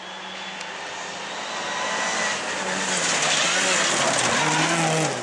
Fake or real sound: real